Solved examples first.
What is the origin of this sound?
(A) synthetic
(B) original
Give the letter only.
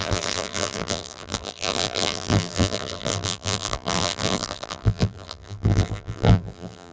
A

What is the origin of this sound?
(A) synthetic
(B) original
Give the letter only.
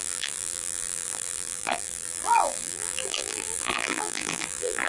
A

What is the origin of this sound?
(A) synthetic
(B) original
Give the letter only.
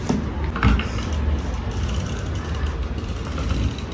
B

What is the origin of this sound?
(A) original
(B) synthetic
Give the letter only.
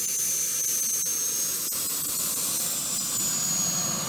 A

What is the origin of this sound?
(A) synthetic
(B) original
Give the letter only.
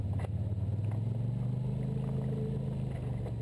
B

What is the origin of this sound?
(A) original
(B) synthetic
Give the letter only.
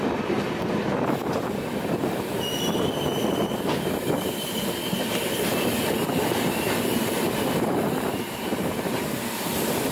B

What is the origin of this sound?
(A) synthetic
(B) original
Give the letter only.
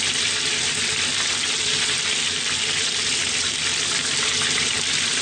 A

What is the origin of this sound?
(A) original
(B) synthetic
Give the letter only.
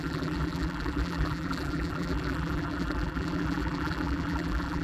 B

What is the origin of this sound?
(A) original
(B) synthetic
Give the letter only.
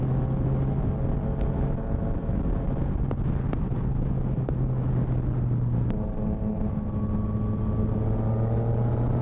A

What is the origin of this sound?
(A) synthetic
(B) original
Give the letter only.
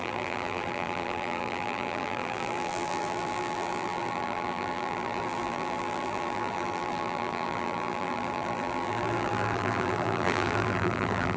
A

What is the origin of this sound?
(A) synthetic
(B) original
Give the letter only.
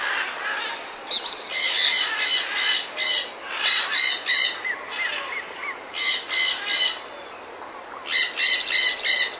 B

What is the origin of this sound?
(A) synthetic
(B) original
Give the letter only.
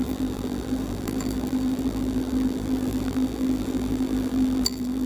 A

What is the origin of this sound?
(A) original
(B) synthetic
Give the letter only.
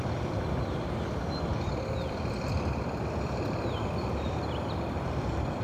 B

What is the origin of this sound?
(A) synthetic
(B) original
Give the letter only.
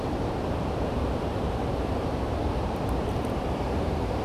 A